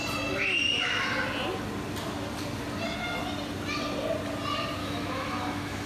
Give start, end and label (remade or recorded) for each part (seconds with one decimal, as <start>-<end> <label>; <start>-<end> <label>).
0.0-4.8 recorded; 4.8-5.9 remade